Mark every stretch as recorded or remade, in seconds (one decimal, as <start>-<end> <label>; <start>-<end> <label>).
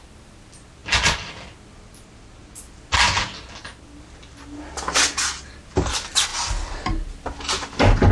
0.0-8.1 recorded